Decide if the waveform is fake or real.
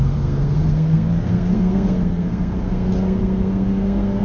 fake